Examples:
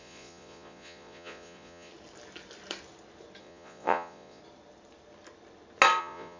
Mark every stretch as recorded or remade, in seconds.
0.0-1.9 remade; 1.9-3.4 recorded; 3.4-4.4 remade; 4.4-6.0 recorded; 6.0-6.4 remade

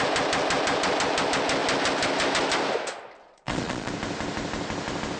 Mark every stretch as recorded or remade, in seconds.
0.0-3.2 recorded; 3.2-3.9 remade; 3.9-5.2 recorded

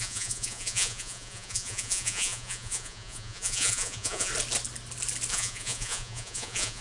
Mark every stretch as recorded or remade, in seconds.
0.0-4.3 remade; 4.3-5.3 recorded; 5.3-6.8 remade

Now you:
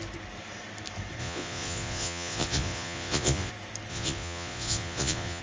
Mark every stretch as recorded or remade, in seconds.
0.0-1.2 recorded; 1.2-3.5 remade; 3.5-3.9 recorded; 3.9-5.4 remade